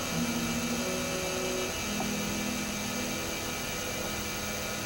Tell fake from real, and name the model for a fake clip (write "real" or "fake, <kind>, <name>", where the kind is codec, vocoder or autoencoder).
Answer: real